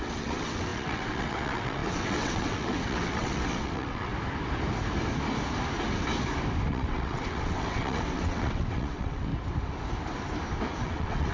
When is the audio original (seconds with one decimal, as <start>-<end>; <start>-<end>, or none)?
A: 4.1-6.7; 9.3-10.8